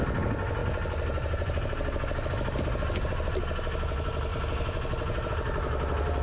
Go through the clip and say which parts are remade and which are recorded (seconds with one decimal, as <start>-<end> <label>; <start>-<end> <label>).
0.0-6.2 recorded